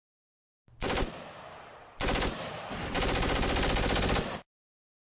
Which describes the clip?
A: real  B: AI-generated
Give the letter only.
A